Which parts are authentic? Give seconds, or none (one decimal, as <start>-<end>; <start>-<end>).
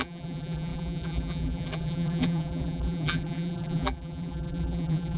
none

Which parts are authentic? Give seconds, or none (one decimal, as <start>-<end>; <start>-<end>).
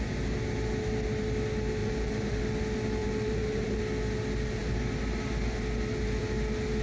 0.0-1.8; 2.4-3.0; 3.8-6.8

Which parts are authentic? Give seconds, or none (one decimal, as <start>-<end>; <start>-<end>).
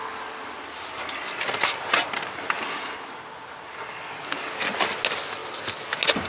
0.0-6.3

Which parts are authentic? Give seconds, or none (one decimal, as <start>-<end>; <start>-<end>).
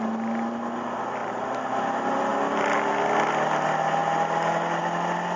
0.0-1.2; 1.8-5.4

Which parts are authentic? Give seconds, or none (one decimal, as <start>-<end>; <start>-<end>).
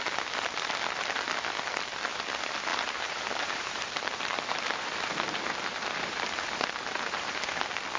0.0-2.7; 7.5-8.0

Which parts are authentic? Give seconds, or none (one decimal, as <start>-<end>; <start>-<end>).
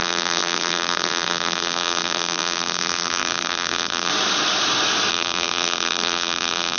4.1-5.1